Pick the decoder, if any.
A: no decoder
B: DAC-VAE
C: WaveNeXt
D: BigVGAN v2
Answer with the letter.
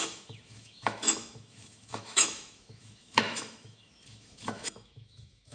B